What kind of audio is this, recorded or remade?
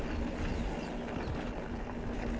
recorded